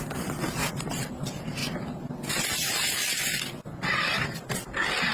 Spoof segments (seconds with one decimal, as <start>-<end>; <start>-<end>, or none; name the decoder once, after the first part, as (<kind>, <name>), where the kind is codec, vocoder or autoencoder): 0.6-1.1 (vocoder, BigVGAN v2)